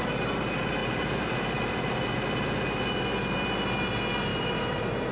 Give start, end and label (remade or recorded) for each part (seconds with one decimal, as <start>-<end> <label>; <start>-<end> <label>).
0.0-0.8 recorded; 0.8-2.0 remade; 2.0-4.3 recorded; 4.3-5.1 remade